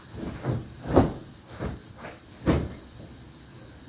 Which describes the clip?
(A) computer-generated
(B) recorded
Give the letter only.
B